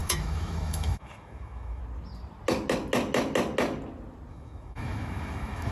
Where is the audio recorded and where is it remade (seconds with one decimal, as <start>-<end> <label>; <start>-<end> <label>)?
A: 0.0-1.8 remade; 1.8-4.3 recorded; 4.3-5.7 remade